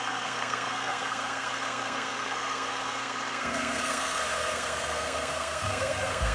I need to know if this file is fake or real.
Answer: fake